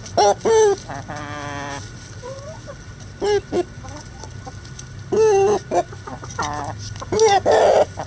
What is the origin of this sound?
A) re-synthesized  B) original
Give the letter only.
B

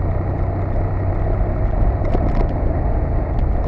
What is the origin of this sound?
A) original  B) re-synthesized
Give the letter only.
A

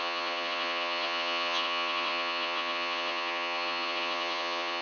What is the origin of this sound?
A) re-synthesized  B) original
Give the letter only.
A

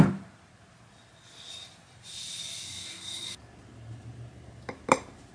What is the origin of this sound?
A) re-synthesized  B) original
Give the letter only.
B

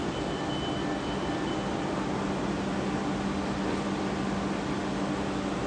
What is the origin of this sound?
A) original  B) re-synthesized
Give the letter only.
A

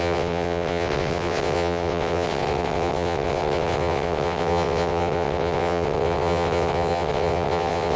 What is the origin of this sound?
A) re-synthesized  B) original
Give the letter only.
A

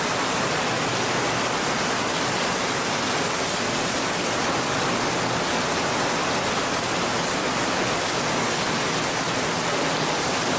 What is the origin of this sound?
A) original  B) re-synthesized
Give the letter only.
A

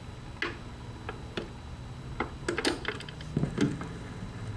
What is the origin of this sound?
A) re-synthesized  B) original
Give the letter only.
B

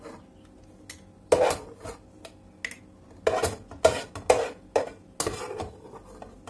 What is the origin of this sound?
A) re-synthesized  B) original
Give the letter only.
B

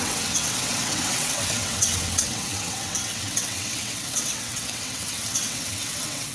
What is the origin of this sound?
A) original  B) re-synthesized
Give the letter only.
B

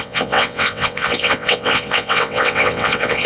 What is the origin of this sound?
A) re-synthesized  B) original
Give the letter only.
A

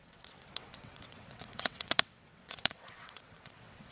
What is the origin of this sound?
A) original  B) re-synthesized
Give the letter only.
B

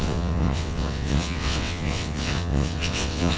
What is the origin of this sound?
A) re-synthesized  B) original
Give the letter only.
A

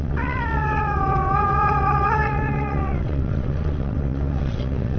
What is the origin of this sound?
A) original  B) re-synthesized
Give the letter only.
B